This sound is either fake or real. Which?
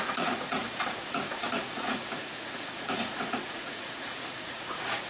fake